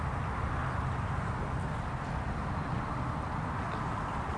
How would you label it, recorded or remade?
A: recorded